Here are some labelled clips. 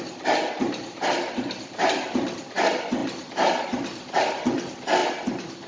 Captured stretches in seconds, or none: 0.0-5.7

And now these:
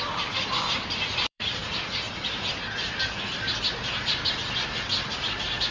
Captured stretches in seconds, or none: 0.0-1.1; 1.8-5.7